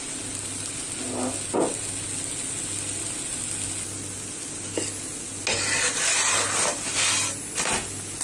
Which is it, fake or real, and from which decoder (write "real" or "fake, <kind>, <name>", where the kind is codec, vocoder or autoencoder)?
real